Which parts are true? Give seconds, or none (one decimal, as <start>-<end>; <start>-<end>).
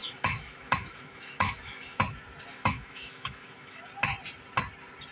2.0-2.5; 3.8-5.1